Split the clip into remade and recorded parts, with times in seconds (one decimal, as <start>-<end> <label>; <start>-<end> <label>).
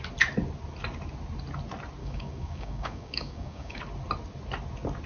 0.0-2.0 recorded; 2.0-3.8 remade; 3.8-5.1 recorded